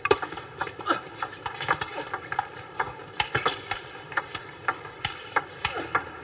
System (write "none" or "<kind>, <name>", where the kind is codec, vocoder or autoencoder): vocoder, BigVGAN v2